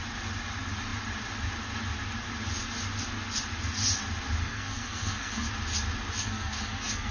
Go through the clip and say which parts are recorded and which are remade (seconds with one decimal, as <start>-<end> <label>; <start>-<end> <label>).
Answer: 0.0-4.4 recorded; 4.4-5.5 remade; 5.5-6.2 recorded; 6.2-7.1 remade